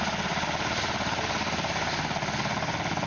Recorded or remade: recorded